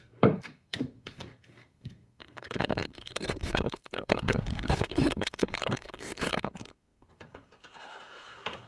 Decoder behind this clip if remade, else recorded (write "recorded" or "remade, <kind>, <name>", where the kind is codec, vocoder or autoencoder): remade, codec, SNAC